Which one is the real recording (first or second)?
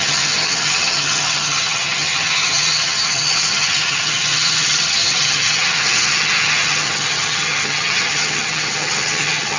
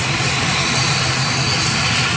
second